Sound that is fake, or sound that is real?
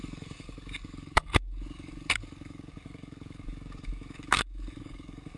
fake